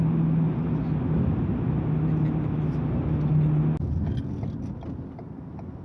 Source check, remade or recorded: recorded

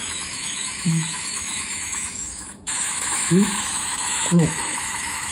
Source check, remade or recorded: remade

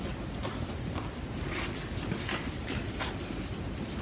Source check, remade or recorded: recorded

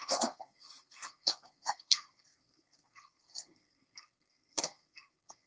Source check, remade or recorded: remade